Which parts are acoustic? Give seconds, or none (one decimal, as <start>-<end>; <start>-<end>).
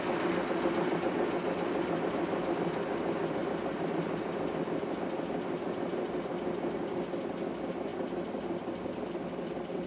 0.0-9.9